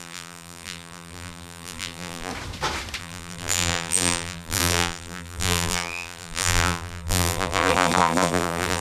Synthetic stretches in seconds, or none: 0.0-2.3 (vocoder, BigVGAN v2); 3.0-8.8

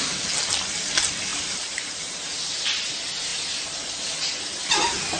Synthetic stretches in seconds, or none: 1.3-2.4 (vocoder, BigVGAN v2)

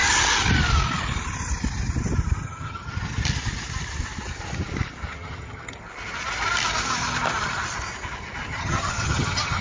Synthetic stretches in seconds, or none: 2.4-2.9 (vocoder, HiFi-GAN); 5.1-5.8; 8.5-9.6

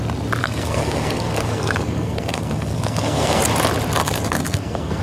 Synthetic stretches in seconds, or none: 0.4-3.4 (codec, SNAC); 4.0-5.0

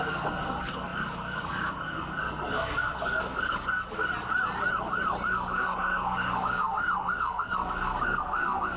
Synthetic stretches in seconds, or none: 0.0-4.1 (codec, SNAC); 5.3-8.8

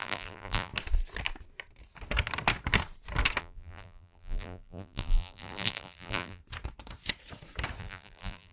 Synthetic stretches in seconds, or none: 0.0-0.7 (vocoder, BigVGAN v2); 3.4-6.4; 7.8-8.5